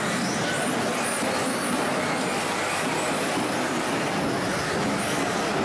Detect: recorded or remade recorded